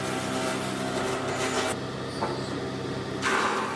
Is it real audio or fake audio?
real